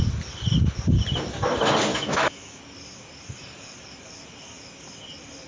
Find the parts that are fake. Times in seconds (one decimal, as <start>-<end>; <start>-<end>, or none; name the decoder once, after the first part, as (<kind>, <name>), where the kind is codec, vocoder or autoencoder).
1.9-2.6 (autoencoder, DAC-VAE)